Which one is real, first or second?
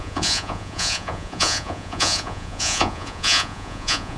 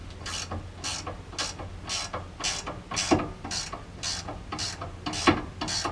second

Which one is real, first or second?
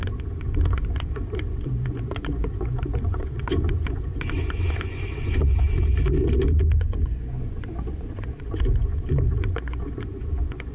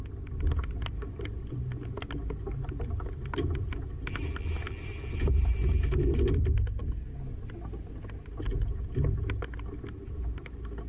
second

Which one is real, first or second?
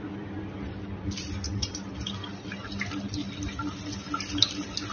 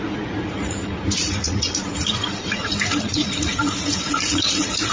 first